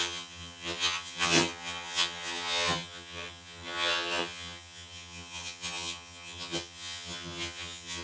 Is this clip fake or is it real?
fake